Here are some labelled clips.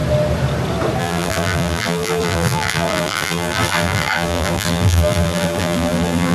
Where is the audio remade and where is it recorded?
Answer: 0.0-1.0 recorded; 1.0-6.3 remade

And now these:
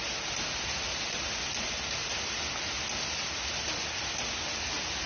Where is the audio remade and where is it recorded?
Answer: 0.0-2.0 recorded; 2.0-2.8 remade; 2.8-5.1 recorded

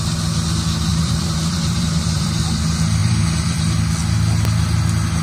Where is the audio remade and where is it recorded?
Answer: 0.0-0.9 recorded; 0.9-2.4 remade; 2.4-3.0 recorded; 3.0-3.6 remade; 3.6-5.2 recorded

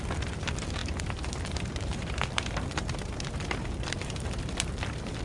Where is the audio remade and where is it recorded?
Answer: 0.0-5.2 remade